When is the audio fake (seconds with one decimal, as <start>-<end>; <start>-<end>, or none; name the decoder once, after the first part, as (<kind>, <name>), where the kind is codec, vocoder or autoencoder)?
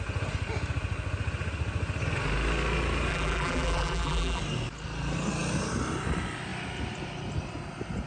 3.1-4.4 (vocoder, BigVGAN v2)